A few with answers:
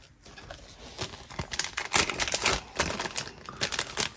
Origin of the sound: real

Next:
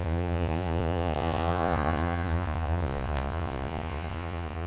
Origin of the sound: fake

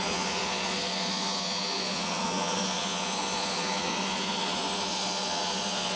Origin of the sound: fake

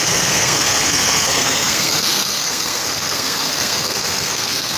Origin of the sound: fake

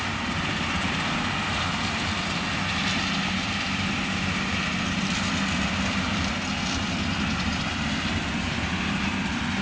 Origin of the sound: fake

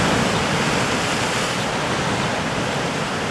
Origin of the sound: fake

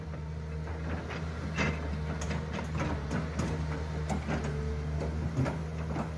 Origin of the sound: real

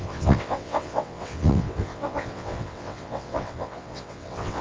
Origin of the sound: fake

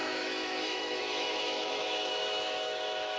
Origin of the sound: fake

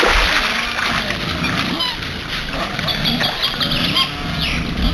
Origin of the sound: real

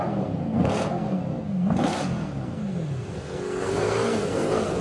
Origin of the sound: fake